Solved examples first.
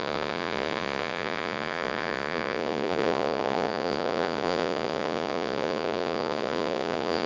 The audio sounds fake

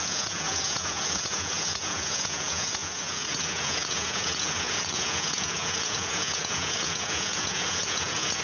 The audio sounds fake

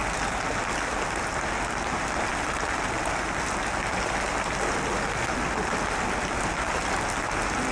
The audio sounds real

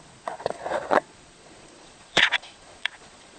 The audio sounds fake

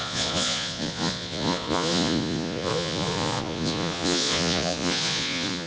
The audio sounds fake